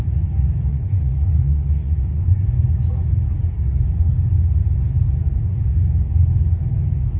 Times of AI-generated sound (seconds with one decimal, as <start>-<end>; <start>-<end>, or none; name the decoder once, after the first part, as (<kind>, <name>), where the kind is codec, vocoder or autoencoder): 0.7-2.9 (vocoder, Vocos)